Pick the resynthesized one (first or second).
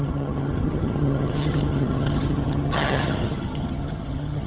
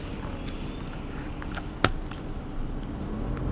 first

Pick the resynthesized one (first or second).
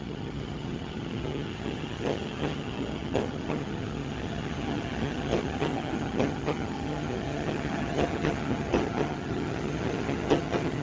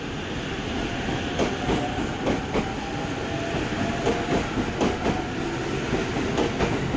first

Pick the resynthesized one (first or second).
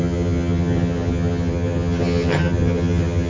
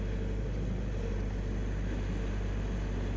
first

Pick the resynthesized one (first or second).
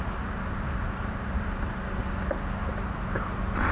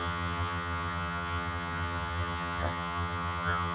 second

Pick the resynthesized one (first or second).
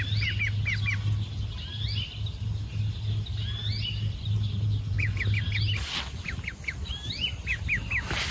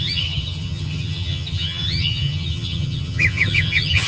second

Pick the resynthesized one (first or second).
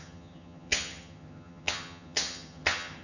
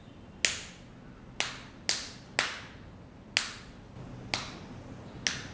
first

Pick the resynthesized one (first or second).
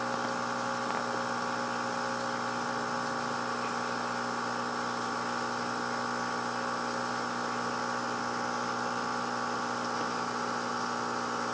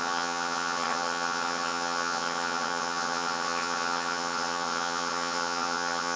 second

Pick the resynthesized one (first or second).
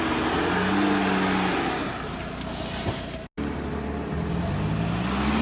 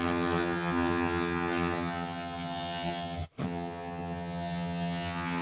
second